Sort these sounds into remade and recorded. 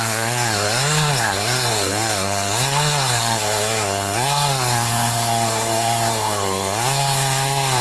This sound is remade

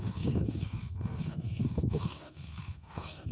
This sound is remade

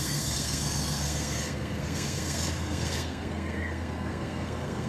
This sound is remade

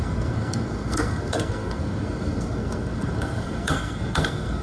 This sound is remade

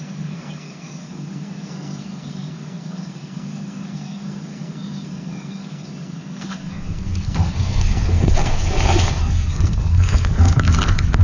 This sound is remade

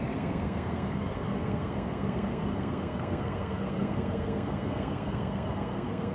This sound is remade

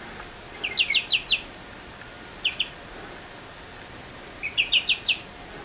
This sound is recorded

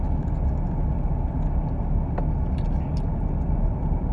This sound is recorded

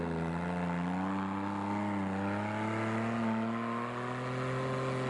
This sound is recorded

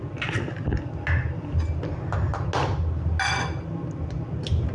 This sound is recorded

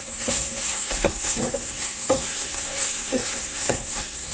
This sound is remade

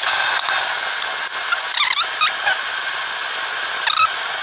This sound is recorded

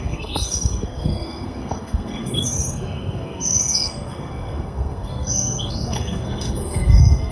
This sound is remade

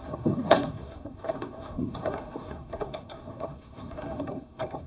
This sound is remade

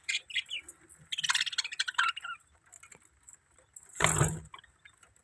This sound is recorded